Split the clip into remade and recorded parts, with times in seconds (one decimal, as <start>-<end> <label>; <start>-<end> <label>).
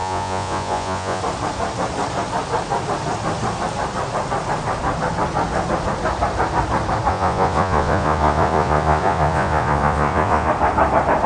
0.0-1.2 remade; 1.2-7.1 recorded; 7.1-10.5 remade; 10.5-11.3 recorded